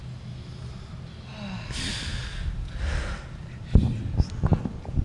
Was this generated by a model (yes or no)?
no